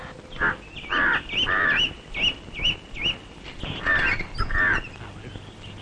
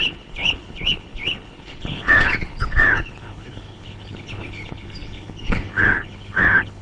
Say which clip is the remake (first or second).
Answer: second